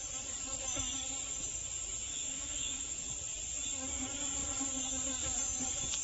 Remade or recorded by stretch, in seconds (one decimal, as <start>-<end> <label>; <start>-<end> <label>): 0.0-2.1 recorded; 2.1-3.0 remade; 3.0-6.0 recorded